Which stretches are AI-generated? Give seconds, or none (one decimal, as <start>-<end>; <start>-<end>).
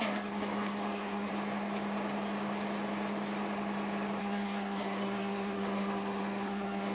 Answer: 0.0-1.3; 4.2-6.9